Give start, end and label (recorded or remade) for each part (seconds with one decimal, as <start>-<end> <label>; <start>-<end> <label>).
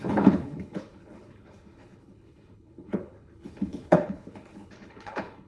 0.0-5.5 remade